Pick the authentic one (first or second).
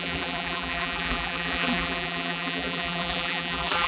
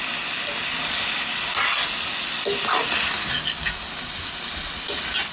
second